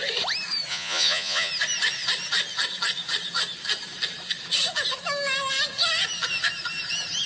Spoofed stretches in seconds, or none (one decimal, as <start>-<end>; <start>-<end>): 0.7-1.5